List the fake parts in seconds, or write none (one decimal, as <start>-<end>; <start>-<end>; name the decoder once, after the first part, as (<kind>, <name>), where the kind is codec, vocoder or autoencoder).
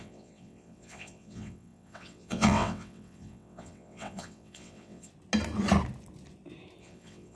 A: 0.0-5.1 (vocoder, WaveNeXt); 6.8-7.4